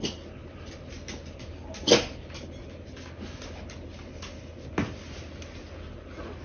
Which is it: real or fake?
real